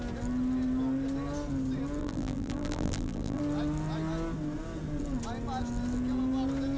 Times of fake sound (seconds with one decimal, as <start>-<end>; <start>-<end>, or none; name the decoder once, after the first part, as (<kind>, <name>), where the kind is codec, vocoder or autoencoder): 2.0-3.4 (vocoder, BigVGAN v2)